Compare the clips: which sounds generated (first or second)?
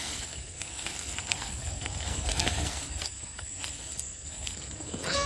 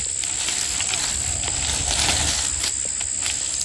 first